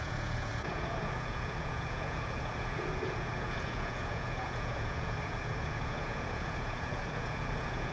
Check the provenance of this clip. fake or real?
fake